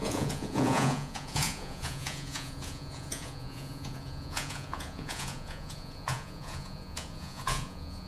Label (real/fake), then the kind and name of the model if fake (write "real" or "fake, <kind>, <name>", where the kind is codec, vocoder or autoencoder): fake, vocoder, Vocos